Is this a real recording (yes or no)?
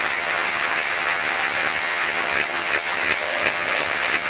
no